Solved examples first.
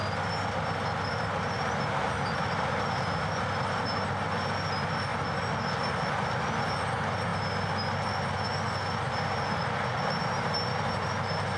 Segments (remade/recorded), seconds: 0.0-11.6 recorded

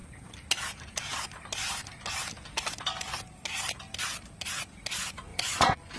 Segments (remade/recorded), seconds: 0.0-5.3 recorded; 5.3-6.0 remade